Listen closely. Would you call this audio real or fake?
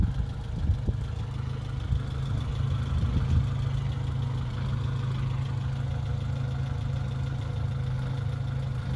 real